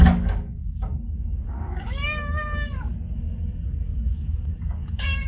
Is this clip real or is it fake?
fake